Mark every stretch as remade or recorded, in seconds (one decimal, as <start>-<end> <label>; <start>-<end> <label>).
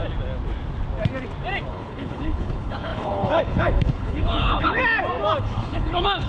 0.0-1.7 recorded; 1.7-4.8 remade; 4.8-5.4 recorded; 5.4-6.3 remade